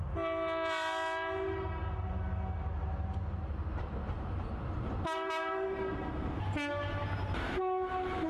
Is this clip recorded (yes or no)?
yes